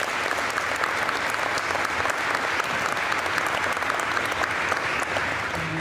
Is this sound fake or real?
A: real